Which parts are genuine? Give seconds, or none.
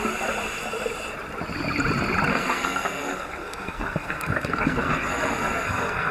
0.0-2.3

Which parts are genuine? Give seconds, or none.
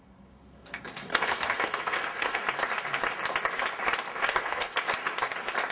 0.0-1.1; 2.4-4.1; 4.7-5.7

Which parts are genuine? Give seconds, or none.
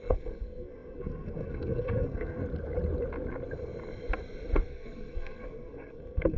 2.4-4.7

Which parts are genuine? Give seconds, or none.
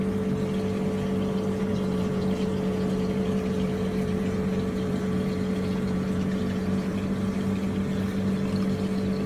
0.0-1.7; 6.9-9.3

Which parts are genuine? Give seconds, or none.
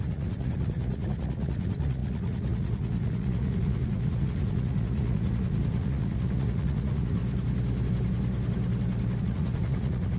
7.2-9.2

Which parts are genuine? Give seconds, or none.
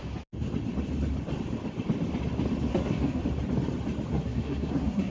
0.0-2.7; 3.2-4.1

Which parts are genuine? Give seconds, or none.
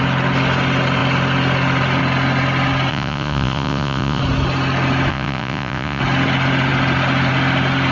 0.0-2.9; 4.2-5.1; 6.0-7.9